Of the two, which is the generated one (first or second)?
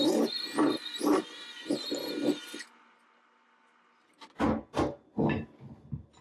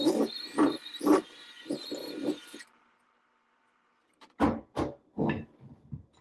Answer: second